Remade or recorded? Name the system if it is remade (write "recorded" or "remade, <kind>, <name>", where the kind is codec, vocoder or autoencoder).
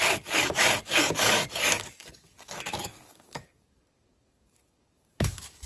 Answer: remade, codec, DAC